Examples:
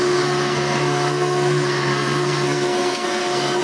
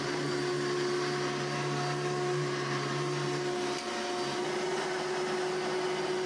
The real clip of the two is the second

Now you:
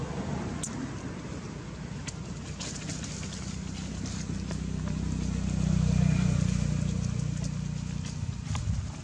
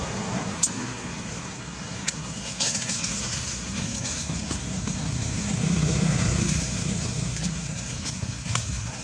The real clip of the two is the first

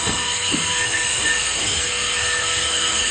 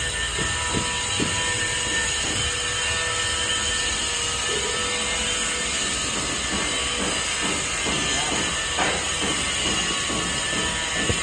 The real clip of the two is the second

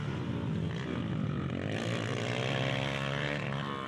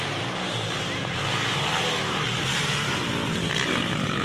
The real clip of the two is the first